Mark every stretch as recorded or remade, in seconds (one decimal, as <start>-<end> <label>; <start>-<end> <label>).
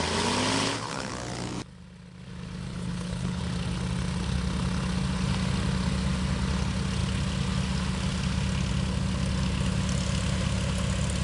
0.0-0.6 recorded; 0.6-1.1 remade; 1.1-2.7 recorded; 2.7-3.4 remade; 3.4-11.2 recorded